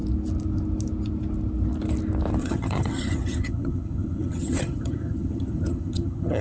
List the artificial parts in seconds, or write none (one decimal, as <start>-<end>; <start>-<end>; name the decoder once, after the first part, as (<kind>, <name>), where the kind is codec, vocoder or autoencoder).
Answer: 2.4-6.4 (vocoder, HiFi-GAN)